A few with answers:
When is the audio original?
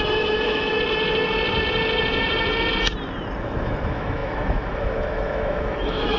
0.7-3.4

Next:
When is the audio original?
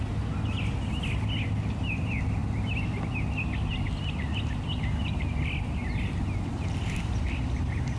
0.0-8.0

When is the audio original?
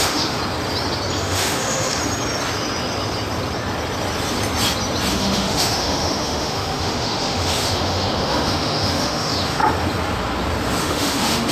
0.4-1.2; 2.0-5.1; 9.6-10.8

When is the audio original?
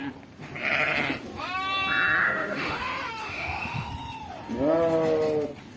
0.0-2.2; 2.8-3.2; 3.9-5.8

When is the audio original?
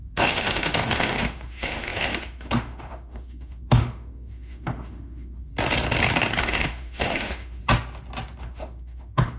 5.5-6.4; 7.6-8.4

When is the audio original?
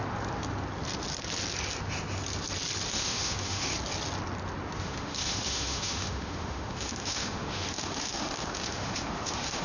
0.0-2.9; 3.7-4.8